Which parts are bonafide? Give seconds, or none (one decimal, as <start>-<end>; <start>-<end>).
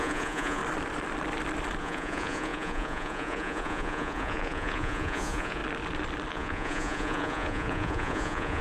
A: 0.6-1.8; 5.6-6.3